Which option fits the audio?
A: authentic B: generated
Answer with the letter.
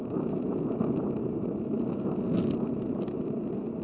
A